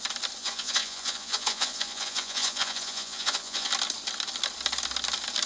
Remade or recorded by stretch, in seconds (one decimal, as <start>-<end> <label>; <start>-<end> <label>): 0.0-0.4 recorded; 0.4-3.7 remade; 3.7-5.5 recorded

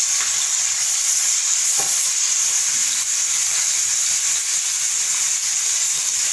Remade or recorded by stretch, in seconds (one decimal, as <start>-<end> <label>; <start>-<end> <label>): 0.0-0.5 recorded; 0.5-2.4 remade; 2.4-6.3 recorded

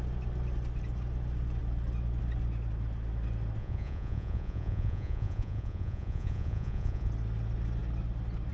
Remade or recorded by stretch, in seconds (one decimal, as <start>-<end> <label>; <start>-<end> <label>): 0.0-3.6 recorded; 3.6-7.1 remade; 7.1-8.5 recorded

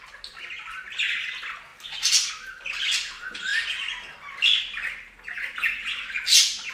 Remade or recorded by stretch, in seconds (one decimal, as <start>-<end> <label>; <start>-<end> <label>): 0.0-6.7 recorded

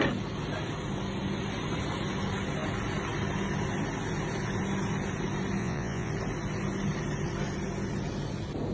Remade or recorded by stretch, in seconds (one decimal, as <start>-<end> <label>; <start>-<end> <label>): 0.0-5.6 recorded; 5.6-6.1 remade; 6.1-8.7 recorded

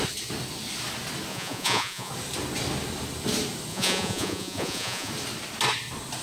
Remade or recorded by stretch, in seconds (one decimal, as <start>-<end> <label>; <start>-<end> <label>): 0.0-1.3 recorded; 1.3-2.1 remade; 2.1-3.7 recorded; 3.7-5.1 remade; 5.1-6.2 recorded